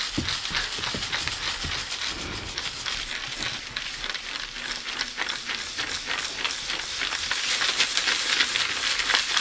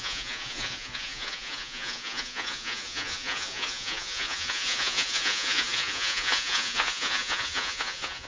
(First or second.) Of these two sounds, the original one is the first